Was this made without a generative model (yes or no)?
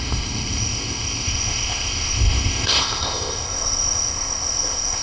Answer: no